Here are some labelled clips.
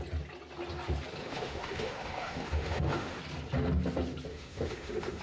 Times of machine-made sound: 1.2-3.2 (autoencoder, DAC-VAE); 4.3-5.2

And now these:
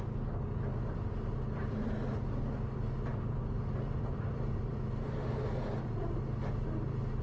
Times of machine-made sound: 3.1-6.2 (vocoder, BigVGAN v2)

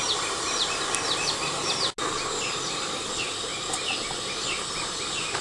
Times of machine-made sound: 0.0-1.6 (vocoder, BigVGAN v2)

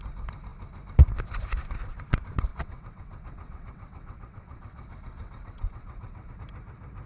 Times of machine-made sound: 2.5-6.3 (vocoder, WaveNeXt)

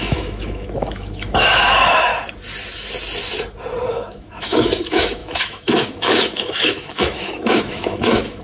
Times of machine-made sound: 0.0-2.1 (autoencoder, DAC-VAE); 3.9-8.4

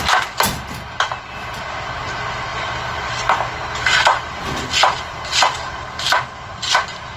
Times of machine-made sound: none

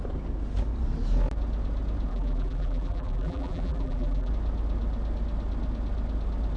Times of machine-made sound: 2.1-4.3 (vocoder, BigVGAN v2)

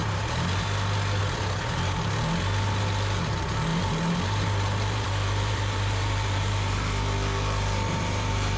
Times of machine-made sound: 3.7-8.6 (vocoder, BigVGAN v2)